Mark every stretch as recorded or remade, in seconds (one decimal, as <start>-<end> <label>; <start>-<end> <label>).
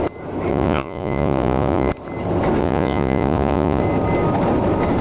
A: 0.0-0.5 recorded; 0.5-1.9 remade; 1.9-2.6 recorded; 2.6-3.8 remade; 3.8-5.0 recorded